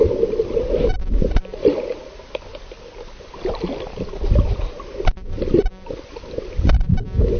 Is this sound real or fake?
real